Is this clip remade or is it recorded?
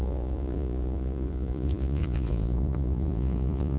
remade